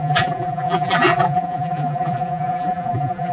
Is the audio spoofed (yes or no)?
yes